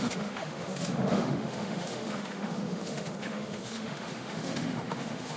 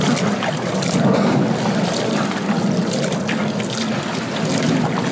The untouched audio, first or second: second